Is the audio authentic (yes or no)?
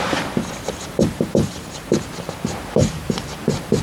no